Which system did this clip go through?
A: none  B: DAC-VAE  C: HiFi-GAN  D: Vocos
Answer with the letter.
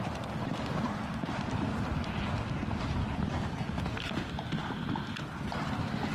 A